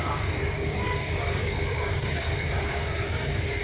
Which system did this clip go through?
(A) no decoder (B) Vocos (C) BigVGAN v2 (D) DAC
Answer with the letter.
D